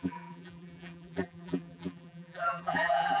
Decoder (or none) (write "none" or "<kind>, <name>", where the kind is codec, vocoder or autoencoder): vocoder, BigVGAN v2